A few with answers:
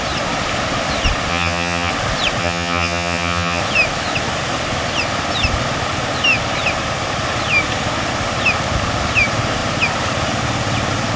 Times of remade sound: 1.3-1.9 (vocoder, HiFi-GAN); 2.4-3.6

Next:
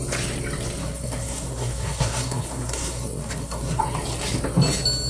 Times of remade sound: 0.8-3.8 (codec, SNAC)

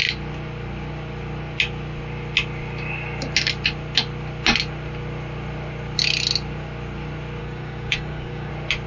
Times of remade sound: 7.4-8.5 (codec, DAC)

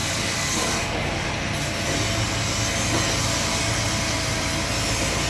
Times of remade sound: 0.0-1.3 (codec, DAC)

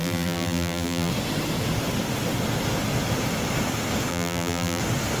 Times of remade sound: 0.0-1.1 (vocoder, BigVGAN v2); 4.1-4.8